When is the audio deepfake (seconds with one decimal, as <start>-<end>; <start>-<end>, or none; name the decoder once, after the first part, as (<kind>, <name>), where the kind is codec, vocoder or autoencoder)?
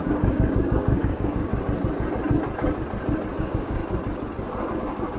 0.0-1.5 (codec, DAC); 3.4-3.8; 4.8-5.2